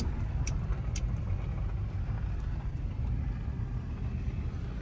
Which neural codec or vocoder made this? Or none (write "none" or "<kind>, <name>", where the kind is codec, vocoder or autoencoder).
none